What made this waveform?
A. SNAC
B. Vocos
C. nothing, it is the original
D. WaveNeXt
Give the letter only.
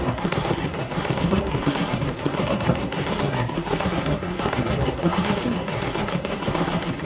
A